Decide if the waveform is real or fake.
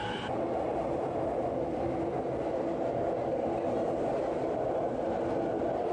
real